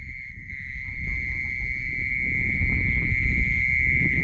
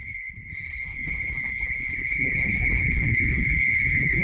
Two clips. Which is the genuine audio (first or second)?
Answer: first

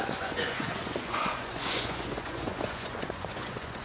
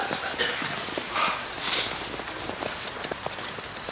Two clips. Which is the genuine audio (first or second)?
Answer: second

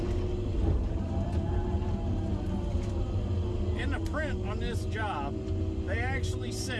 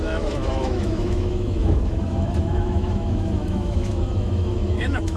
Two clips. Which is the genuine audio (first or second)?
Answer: first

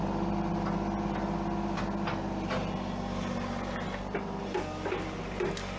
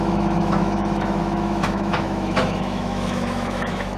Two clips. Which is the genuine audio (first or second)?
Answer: first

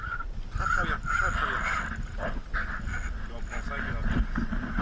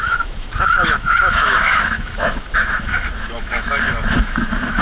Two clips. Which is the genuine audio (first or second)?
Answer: first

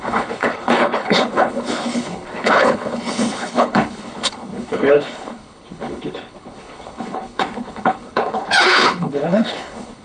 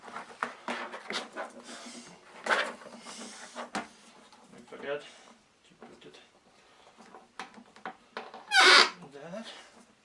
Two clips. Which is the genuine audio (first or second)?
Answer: second